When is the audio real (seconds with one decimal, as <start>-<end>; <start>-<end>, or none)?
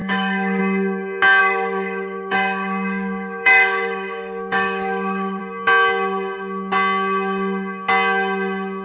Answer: 0.6-1.4; 5.4-8.8